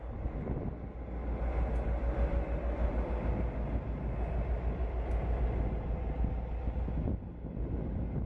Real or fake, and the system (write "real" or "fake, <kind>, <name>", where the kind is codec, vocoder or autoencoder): real